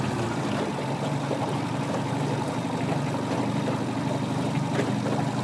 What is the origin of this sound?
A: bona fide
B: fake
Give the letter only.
A